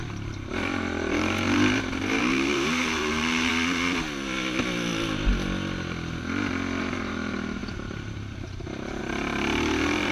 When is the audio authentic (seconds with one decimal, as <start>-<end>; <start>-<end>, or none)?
3.5-6.8